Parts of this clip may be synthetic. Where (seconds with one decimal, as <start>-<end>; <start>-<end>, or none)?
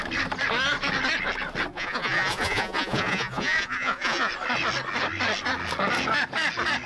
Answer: 1.7-4.3